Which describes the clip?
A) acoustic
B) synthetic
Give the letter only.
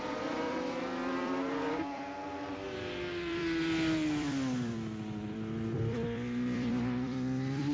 B